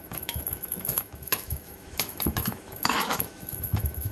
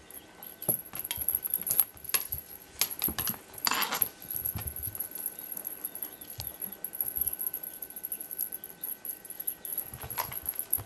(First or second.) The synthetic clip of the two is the first